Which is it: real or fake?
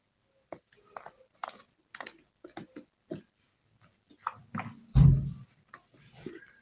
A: real